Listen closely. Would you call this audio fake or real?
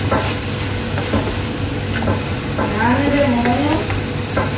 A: real